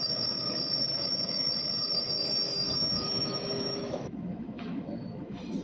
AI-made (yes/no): yes